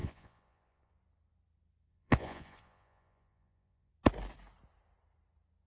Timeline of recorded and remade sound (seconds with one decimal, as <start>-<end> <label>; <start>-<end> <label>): 0.0-0.9 remade; 0.9-1.9 recorded; 1.9-3.9 remade; 3.9-5.7 recorded

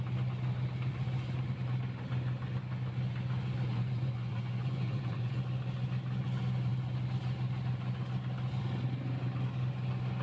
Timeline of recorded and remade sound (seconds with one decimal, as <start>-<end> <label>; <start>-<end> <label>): 0.0-3.7 recorded; 3.7-5.3 remade; 5.3-10.2 recorded

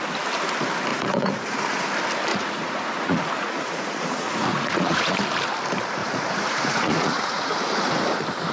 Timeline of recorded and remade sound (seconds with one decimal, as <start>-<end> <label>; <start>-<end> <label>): 0.0-0.9 recorded; 0.9-1.8 remade; 1.8-2.3 recorded; 2.3-5.2 remade; 5.2-6.0 recorded; 6.0-8.0 remade; 8.0-8.5 recorded